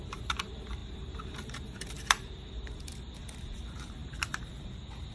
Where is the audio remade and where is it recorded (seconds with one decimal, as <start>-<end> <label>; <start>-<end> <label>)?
0.0-5.1 remade